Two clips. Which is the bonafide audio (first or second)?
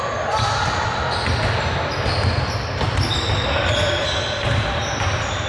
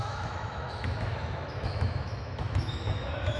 first